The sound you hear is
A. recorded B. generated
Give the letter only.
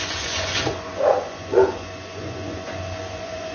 B